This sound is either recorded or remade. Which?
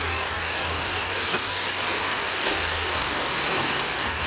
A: remade